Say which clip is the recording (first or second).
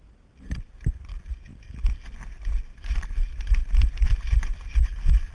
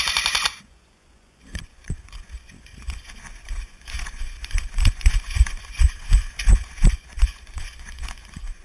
first